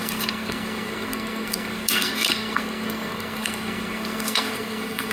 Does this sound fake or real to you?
fake